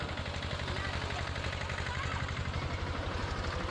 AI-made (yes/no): no